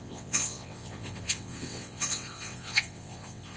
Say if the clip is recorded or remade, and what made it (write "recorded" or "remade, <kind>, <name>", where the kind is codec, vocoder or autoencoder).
remade, vocoder, WaveNeXt